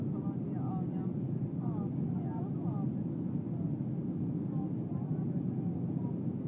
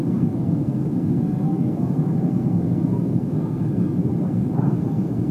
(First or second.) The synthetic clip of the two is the second